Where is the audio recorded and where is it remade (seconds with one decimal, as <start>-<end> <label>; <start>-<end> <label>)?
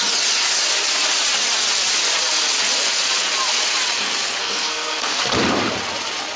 0.0-4.4 recorded; 4.4-5.2 remade; 5.2-6.4 recorded